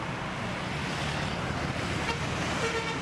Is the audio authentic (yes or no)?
yes